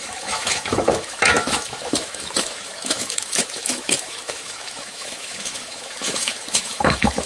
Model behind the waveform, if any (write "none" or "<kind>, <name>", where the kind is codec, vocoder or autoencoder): autoencoder, DAC-VAE